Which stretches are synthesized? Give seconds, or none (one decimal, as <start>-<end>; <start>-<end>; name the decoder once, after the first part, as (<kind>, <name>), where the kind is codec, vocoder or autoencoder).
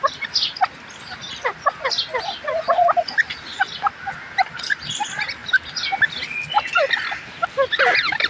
none